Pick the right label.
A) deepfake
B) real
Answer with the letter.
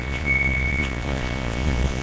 A